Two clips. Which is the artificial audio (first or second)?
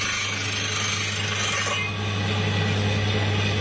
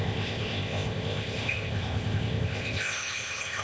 second